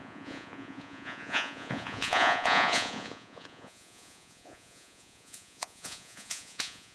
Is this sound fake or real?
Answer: fake